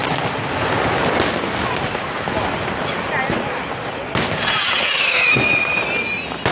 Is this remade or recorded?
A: recorded